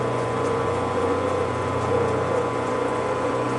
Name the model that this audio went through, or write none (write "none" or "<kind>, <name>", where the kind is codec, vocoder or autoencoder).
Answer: vocoder, Vocos